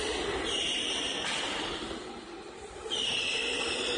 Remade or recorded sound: remade